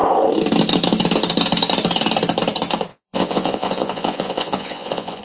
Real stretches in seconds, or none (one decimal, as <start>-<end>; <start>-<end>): 0.0-2.9